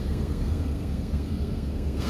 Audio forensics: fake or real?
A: fake